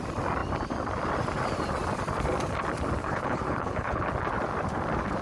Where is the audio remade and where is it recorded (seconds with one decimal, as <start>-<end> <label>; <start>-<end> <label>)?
0.0-3.0 recorded; 3.0-4.0 remade; 4.0-5.2 recorded